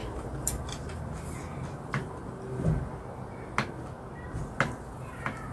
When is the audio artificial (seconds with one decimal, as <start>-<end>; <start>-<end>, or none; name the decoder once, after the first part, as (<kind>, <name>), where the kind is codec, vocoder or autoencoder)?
0.0-1.0 (vocoder, BigVGAN v2)